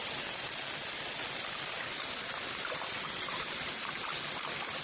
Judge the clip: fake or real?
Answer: real